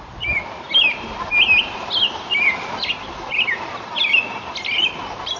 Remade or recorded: recorded